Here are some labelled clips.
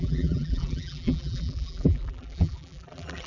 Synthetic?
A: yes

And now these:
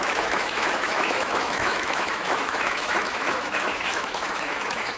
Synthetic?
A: yes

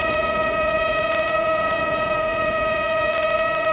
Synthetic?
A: yes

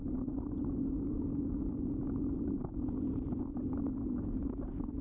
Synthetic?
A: no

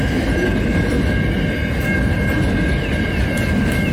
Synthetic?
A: no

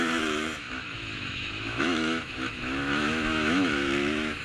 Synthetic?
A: yes